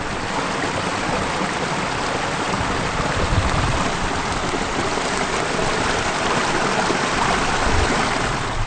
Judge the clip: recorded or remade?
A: recorded